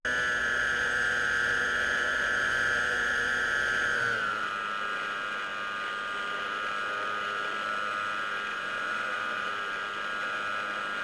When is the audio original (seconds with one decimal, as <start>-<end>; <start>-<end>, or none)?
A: 0.0-0.4; 4.5-8.5; 9.5-11.0